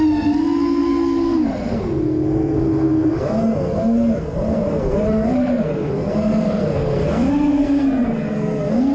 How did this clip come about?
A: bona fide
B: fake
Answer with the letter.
B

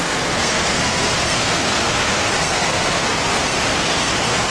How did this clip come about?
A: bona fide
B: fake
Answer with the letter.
B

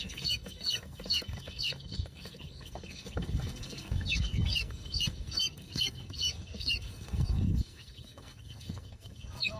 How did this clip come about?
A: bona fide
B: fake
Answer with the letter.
B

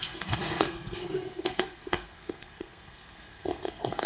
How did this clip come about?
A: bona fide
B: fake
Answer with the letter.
B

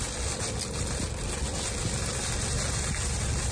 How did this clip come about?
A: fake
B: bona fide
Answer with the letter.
B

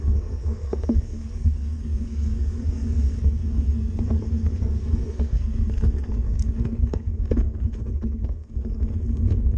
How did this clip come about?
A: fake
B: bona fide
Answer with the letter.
A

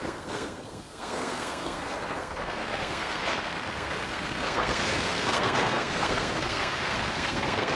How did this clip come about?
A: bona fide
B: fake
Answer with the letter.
B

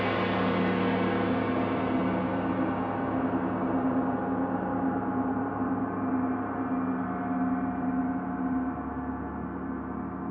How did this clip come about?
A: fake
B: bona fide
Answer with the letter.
B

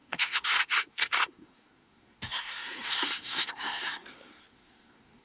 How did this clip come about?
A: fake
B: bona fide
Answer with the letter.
A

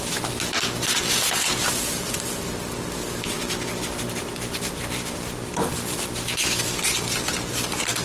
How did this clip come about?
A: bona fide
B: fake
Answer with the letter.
A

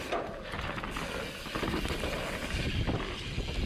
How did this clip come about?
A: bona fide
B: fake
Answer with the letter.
A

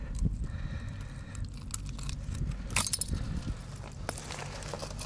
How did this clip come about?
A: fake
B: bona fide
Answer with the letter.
B